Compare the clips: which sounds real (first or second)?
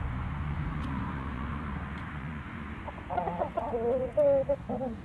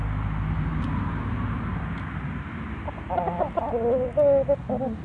second